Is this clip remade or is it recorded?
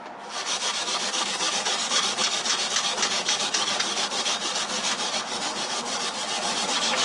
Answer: remade